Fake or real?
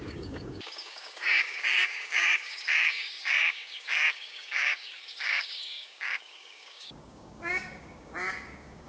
fake